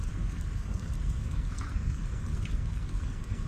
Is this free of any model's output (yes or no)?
no